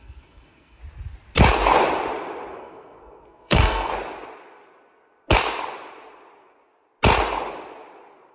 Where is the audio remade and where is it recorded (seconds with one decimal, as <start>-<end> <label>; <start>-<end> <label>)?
0.0-0.8 remade; 0.8-2.6 recorded; 2.6-3.9 remade; 3.9-8.3 recorded